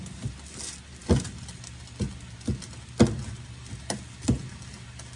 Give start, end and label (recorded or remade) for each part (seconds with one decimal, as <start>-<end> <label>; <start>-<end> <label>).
0.0-5.2 recorded